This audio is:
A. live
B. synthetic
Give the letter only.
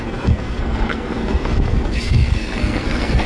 B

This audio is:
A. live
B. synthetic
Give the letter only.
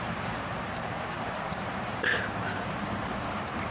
B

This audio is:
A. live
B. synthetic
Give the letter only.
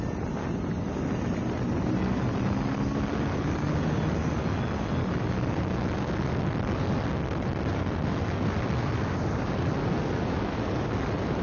A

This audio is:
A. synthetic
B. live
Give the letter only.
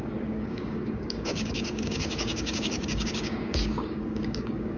A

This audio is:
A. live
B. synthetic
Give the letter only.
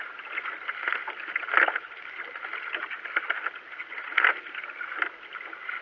A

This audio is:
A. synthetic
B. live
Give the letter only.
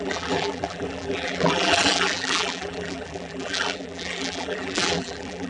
A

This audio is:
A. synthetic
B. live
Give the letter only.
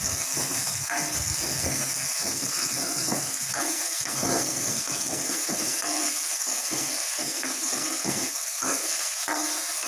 A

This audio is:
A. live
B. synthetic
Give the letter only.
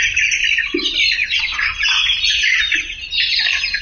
A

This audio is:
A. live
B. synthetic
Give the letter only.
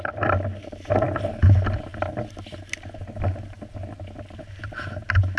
A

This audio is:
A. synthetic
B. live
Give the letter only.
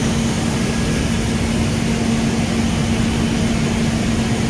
B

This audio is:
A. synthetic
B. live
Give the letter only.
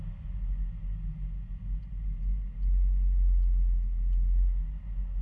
B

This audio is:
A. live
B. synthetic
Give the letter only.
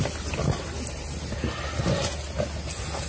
A